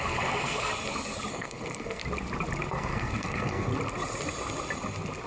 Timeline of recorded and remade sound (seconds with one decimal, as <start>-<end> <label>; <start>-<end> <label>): 0.0-0.7 remade; 0.7-1.3 recorded; 1.3-2.0 remade; 2.0-2.7 recorded; 2.7-3.7 remade; 3.7-5.3 recorded